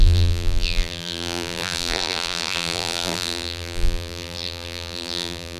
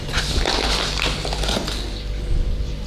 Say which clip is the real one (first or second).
second